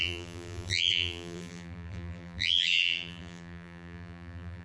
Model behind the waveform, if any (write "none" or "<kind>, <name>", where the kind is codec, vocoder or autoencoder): vocoder, BigVGAN v2